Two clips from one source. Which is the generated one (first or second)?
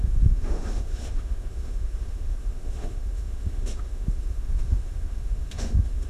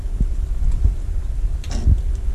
first